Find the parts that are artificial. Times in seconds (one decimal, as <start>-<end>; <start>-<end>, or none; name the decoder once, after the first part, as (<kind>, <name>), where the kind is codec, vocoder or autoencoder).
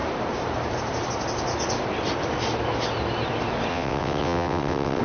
3.7-5.0 (vocoder, WaveNeXt)